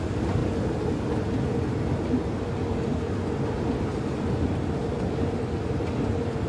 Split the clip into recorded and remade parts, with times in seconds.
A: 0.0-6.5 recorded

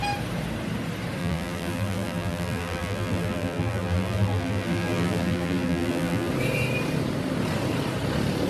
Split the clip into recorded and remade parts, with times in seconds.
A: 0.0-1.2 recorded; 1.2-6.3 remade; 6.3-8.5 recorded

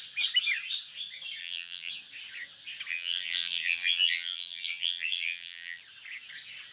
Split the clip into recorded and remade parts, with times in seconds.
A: 0.0-1.4 recorded; 1.4-1.9 remade; 1.9-2.9 recorded; 2.9-5.8 remade; 5.8-6.7 recorded